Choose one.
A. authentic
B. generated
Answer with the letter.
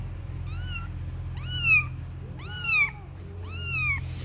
A